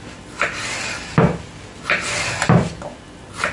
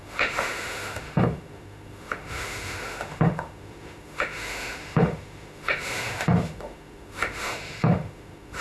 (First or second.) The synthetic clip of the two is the second